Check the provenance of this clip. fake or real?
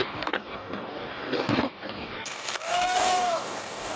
fake